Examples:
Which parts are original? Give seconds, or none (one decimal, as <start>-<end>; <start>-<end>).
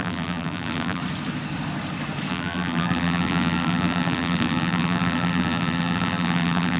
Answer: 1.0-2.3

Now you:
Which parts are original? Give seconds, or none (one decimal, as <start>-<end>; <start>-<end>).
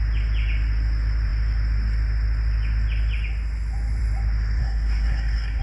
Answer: 0.0-4.6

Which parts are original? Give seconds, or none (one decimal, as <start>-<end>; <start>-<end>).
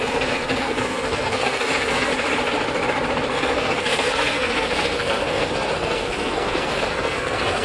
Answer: 2.1-3.3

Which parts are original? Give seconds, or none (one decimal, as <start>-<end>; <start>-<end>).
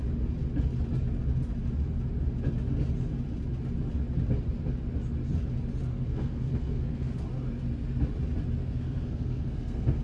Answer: 0.0-5.9; 7.1-8.6